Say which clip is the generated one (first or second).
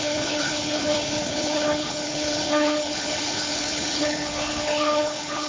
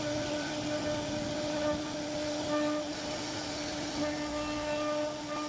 first